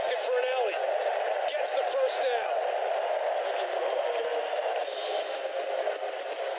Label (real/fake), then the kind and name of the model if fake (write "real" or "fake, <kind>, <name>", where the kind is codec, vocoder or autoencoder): real